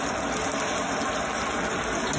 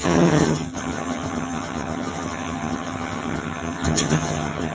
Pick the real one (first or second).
first